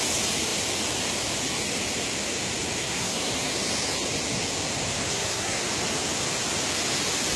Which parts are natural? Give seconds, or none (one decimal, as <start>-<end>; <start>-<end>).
0.0-2.8; 3.3-5.1; 5.6-7.4